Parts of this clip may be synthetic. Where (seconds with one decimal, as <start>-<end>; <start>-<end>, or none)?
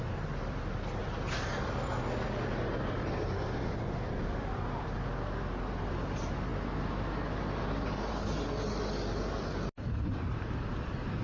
none